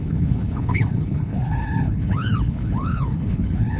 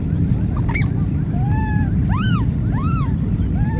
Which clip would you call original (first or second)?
second